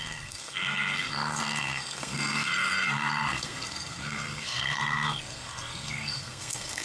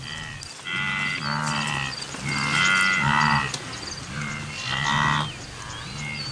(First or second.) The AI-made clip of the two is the first